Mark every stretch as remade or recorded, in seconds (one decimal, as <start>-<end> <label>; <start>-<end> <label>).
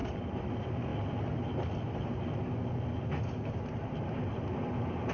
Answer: 0.0-5.1 recorded